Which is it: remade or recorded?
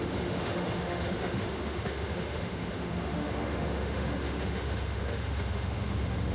remade